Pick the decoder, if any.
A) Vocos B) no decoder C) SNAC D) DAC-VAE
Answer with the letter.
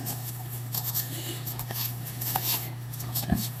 D